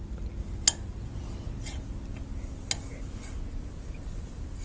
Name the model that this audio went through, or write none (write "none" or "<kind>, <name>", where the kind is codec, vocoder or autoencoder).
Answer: none